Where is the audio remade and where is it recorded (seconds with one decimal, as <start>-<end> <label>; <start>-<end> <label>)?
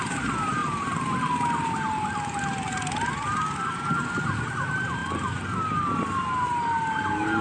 0.0-7.4 recorded